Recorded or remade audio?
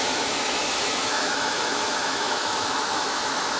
remade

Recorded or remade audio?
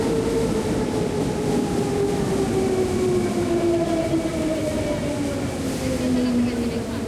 recorded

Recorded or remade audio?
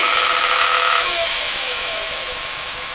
remade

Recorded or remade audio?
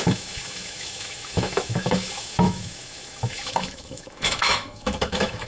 remade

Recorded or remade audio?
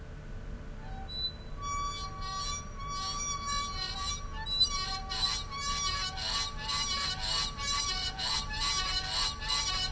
recorded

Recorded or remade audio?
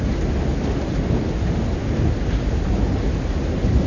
recorded